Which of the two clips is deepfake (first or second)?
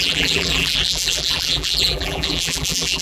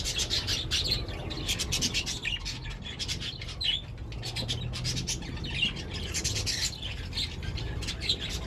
first